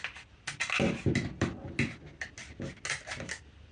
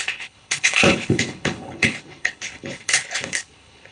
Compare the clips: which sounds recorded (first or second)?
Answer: first